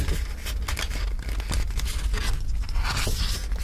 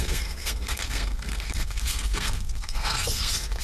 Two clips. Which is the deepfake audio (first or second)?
second